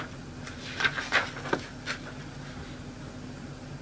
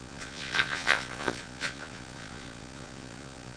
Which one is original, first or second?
first